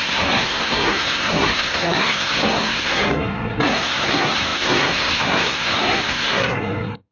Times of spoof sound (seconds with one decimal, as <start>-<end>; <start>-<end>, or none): 0.0-7.1